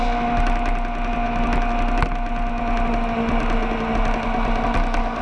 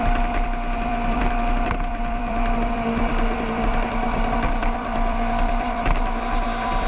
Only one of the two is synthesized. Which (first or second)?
second